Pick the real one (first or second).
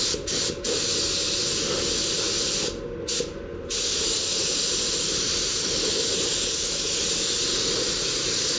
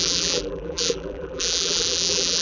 first